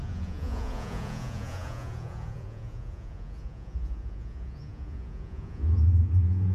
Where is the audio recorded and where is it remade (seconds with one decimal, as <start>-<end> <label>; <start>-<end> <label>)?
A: 0.0-6.5 remade